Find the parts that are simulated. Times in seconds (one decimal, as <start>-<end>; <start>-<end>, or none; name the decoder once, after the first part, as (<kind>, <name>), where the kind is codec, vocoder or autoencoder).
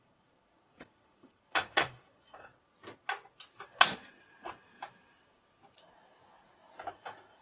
0.0-2.5 (vocoder, Vocos); 6.9-7.4